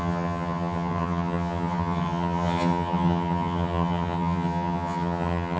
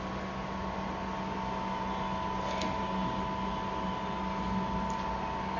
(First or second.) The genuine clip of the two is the second